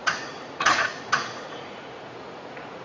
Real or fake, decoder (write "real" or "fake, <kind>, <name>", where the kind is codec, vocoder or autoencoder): fake, vocoder, Vocos